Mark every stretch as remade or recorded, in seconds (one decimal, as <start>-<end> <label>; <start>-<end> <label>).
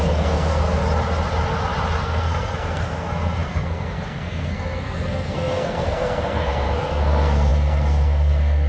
0.0-0.8 remade; 0.8-2.0 recorded; 2.0-8.7 remade